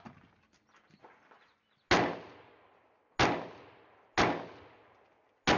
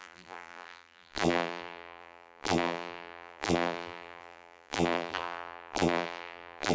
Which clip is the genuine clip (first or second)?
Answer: first